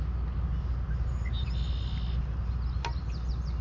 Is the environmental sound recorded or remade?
recorded